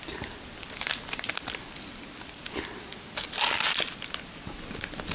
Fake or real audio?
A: fake